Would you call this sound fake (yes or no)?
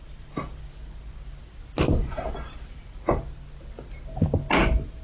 no